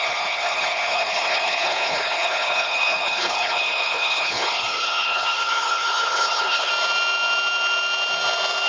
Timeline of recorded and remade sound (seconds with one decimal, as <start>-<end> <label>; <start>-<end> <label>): 0.0-6.7 remade; 6.7-8.7 recorded